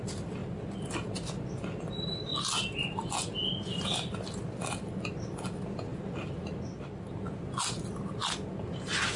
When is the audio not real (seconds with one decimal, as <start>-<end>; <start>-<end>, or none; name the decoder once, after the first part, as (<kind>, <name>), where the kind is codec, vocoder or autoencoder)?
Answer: none

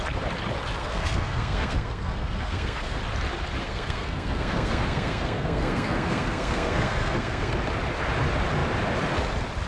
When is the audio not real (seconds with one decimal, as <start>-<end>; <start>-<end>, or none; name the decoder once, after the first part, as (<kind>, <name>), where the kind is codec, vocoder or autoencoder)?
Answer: 0.8-3.0 (codec, SNAC); 3.6-7.5

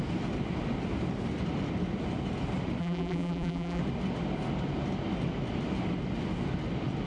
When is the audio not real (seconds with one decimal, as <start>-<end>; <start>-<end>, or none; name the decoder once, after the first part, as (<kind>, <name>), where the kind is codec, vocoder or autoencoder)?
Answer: 2.8-3.8 (vocoder, BigVGAN v2)

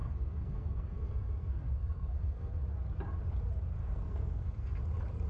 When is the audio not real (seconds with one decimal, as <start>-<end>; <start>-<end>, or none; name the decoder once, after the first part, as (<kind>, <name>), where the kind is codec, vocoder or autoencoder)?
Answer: 0.0-2.5 (codec, SNAC); 3.8-4.8

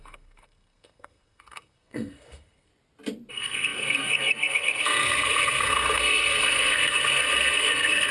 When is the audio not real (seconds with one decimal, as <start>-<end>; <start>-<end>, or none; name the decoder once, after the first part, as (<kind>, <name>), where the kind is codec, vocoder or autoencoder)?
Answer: 0.0-2.7 (codec, SNAC); 3.3-8.1

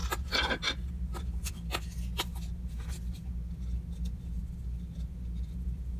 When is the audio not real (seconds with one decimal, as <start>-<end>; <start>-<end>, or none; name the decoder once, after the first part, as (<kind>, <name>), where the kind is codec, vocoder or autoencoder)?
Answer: none

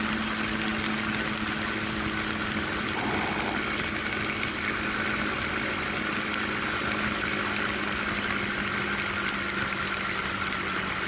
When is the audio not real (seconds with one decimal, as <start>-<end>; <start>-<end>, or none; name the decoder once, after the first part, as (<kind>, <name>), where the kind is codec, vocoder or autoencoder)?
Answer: none

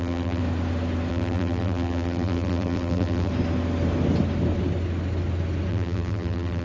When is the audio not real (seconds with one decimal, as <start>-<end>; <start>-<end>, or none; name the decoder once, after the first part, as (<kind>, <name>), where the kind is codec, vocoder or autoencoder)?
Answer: 0.0-0.4 (vocoder, BigVGAN v2); 1.1-3.3; 5.7-6.6